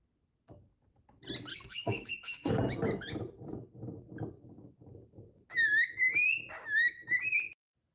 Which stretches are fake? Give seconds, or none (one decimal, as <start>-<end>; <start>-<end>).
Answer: 1.5-2.5